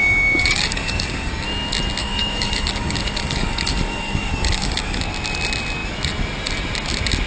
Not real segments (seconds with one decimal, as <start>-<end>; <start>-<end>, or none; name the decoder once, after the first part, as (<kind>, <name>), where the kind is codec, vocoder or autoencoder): 0.0-1.3 (codec, DAC); 2.0-5.0